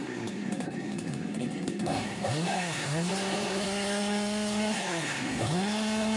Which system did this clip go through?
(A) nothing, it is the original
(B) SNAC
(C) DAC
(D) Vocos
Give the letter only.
B